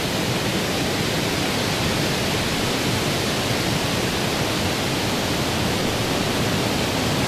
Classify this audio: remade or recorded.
recorded